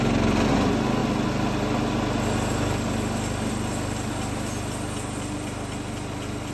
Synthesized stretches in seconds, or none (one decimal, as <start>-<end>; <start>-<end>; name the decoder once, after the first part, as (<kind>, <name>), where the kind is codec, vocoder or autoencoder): none